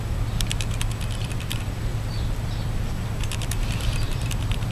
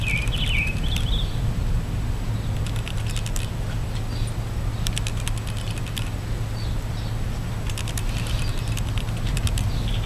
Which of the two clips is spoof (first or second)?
first